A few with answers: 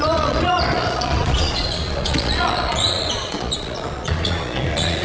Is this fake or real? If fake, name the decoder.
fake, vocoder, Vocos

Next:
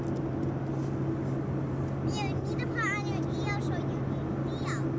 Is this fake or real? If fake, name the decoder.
real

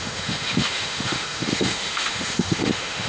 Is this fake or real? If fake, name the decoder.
fake, autoencoder, DAC-VAE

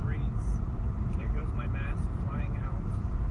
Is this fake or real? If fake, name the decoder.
fake, vocoder, BigVGAN v2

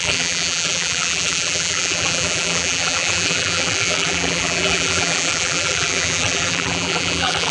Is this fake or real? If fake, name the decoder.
fake, vocoder, BigVGAN v2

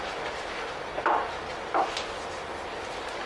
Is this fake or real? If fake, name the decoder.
real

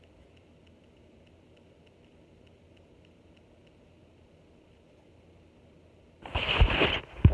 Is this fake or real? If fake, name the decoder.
real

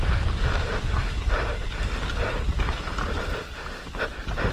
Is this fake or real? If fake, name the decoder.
real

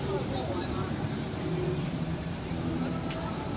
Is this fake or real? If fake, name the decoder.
fake, vocoder, BigVGAN v2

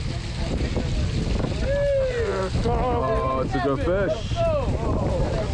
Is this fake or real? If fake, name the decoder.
real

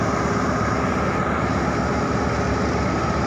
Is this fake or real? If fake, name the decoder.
real